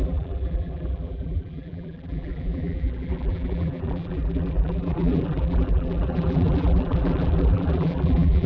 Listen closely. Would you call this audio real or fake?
fake